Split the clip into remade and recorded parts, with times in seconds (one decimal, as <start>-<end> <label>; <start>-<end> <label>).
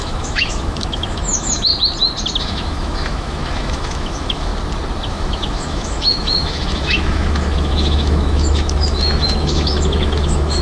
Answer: 0.0-1.7 remade; 1.7-2.4 recorded; 2.4-4.5 remade; 4.5-5.1 recorded; 5.1-10.6 remade